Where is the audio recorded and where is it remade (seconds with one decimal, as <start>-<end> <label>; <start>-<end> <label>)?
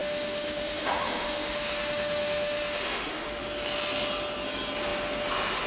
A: 0.0-3.4 remade; 3.4-5.7 recorded